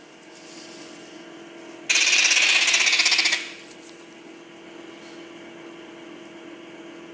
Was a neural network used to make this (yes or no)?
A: no